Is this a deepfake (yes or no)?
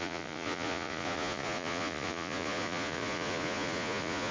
yes